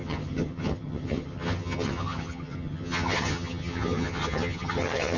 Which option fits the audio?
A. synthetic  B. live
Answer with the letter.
A